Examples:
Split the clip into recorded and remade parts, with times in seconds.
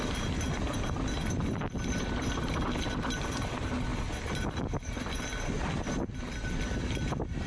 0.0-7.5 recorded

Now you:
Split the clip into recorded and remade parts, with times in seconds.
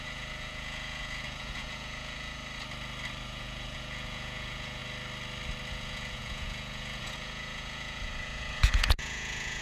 0.0-2.4 remade; 2.4-3.2 recorded; 3.2-4.8 remade; 4.8-5.7 recorded; 5.7-9.6 remade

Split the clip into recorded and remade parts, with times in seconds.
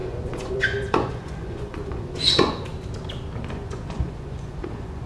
0.0-2.7 remade; 2.7-3.5 recorded; 3.5-5.1 remade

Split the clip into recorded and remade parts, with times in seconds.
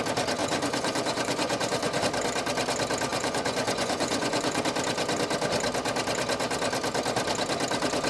0.0-0.4 recorded; 0.4-2.0 remade; 2.0-3.1 recorded; 3.1-4.6 remade; 4.6-8.1 recorded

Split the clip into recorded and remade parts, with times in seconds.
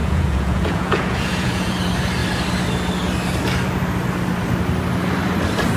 0.0-1.7 remade; 1.7-5.8 recorded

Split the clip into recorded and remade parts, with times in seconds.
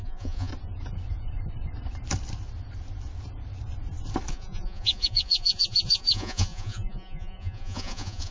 0.0-0.5 remade; 0.5-4.3 recorded; 4.3-8.3 remade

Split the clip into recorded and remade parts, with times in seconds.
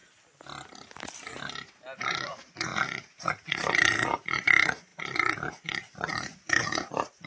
0.0-2.0 recorded; 2.0-7.3 remade